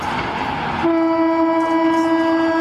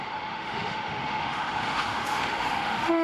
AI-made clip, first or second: second